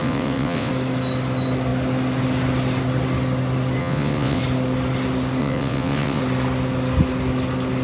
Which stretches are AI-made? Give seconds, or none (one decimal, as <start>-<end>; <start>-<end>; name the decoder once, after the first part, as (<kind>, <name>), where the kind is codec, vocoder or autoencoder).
0.0-0.7 (vocoder, WaveNeXt); 3.8-4.4; 5.4-6.2